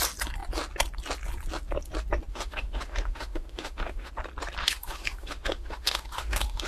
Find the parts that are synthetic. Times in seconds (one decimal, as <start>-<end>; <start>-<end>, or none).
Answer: 2.3-4.1; 4.6-6.7